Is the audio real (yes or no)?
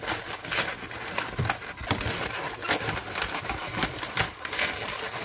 yes